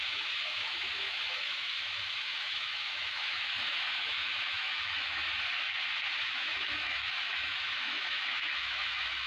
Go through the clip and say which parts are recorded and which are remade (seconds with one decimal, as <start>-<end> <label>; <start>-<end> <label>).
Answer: 0.0-5.2 remade; 5.2-6.2 recorded; 6.2-9.3 remade